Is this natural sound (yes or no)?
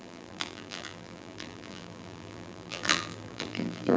no